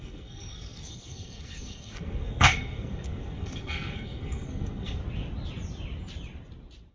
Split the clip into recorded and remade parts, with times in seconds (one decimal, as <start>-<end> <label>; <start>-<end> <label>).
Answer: 0.0-5.0 remade; 5.0-6.9 recorded